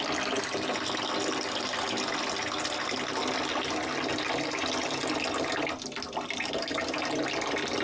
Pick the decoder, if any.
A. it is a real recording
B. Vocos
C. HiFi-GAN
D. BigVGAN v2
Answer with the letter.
A